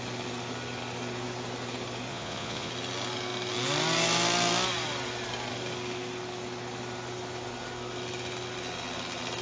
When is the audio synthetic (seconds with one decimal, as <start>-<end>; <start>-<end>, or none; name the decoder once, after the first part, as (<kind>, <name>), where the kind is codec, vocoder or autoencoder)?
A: 2.1-2.7 (vocoder, Vocos)